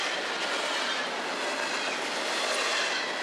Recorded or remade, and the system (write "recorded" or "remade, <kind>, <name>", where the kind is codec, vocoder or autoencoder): recorded